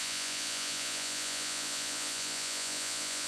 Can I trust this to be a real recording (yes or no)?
no